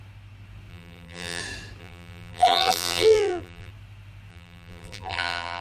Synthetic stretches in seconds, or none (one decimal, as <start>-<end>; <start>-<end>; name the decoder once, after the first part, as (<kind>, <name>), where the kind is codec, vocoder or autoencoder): 0.7-1.4 (vocoder, BigVGAN v2); 1.8-3.7; 4.3-5.6